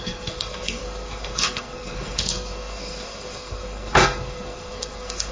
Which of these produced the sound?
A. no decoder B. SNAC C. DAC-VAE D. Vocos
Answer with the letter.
B